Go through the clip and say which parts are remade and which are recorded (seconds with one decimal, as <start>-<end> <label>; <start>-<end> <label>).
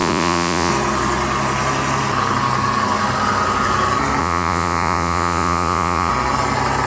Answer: 0.0-0.7 remade; 0.7-4.2 recorded; 4.2-6.1 remade; 6.1-6.9 recorded